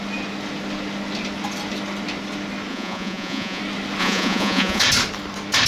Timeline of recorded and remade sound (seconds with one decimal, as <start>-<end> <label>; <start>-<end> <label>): 0.0-2.7 recorded; 2.7-3.6 remade; 3.6-4.0 recorded; 4.0-4.8 remade; 4.8-5.7 recorded